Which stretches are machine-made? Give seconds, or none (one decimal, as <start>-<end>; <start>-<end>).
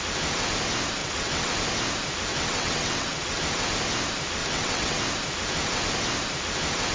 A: 1.0-1.5; 2.3-3.4; 4.4-5.0